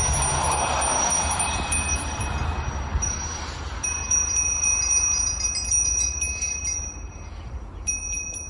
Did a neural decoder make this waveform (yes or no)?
yes